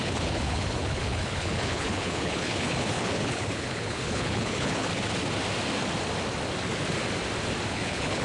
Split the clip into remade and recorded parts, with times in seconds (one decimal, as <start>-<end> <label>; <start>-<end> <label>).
0.0-4.9 remade; 4.9-7.7 recorded; 7.7-8.2 remade